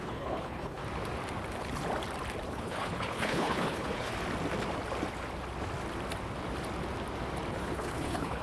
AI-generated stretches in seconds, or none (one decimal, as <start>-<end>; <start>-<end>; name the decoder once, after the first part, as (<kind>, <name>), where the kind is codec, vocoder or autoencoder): 0.0-0.8 (codec, HILCodec); 2.5-4.1; 7.5-8.4